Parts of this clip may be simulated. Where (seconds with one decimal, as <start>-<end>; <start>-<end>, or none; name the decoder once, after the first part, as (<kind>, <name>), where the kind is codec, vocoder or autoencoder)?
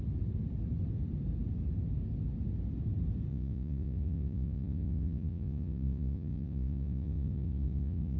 3.3-8.2 (vocoder, Vocos)